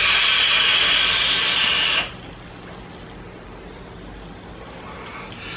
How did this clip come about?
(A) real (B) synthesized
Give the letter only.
A